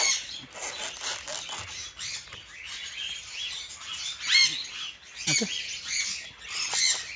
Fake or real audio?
real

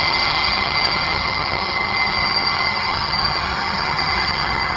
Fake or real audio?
fake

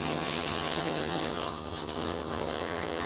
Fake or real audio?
fake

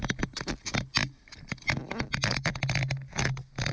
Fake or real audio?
real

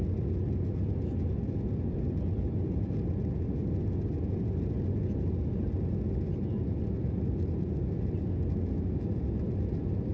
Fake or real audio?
real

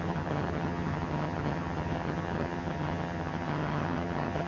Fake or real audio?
fake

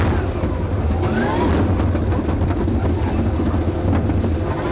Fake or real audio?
real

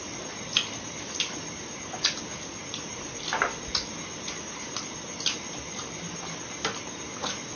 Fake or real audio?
real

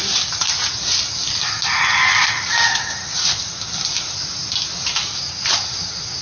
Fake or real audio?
real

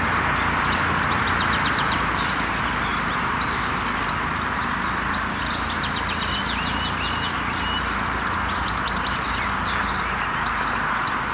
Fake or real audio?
real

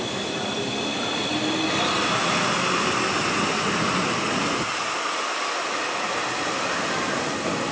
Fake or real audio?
real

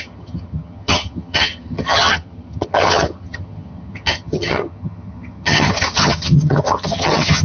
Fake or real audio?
fake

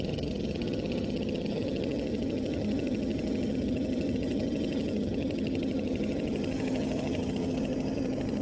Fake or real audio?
fake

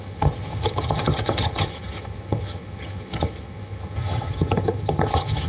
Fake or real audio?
fake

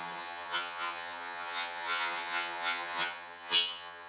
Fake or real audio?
fake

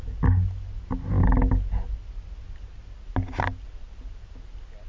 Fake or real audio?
real